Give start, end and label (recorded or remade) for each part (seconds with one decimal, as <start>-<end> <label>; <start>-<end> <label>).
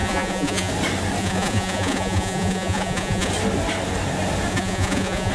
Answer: 0.0-0.7 remade; 0.7-1.2 recorded; 1.2-3.3 remade; 3.3-4.5 recorded; 4.5-5.3 remade